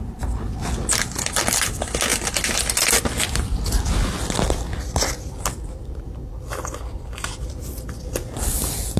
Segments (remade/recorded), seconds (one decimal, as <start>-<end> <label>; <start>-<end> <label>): 0.0-9.0 recorded